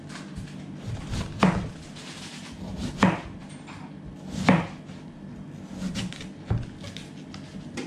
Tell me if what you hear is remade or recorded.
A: recorded